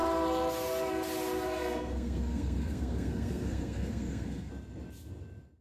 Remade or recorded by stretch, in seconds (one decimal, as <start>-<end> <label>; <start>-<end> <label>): 0.0-1.6 recorded; 1.6-4.5 remade; 4.5-5.6 recorded